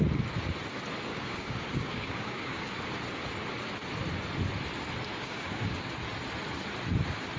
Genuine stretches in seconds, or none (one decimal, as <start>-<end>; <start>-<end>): 0.0-1.1; 2.8-5.1; 5.9-7.4